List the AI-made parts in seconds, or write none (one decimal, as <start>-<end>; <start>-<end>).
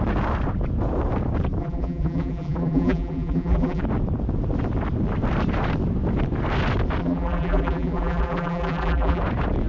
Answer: 1.6-3.8; 7.0-9.2